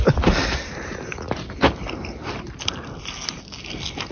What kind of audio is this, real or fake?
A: real